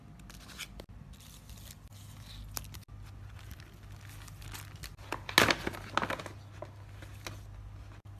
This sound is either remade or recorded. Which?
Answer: recorded